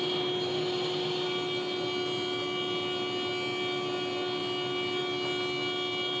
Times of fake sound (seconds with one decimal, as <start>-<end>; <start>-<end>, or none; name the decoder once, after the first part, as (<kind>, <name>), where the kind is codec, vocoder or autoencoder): none